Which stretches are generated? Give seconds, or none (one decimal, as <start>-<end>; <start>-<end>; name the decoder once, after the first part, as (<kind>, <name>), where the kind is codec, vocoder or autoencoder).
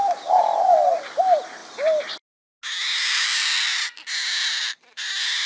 none